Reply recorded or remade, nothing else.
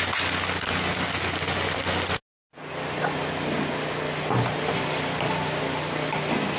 recorded